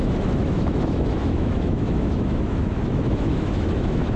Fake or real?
fake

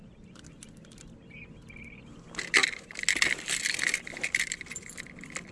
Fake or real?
real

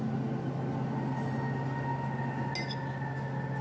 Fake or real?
real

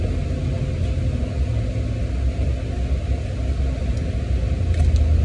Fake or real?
real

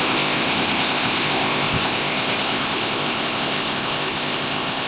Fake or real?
fake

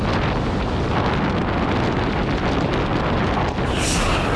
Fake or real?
real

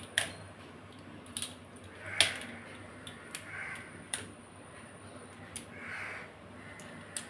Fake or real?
real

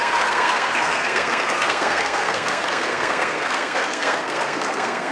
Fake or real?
fake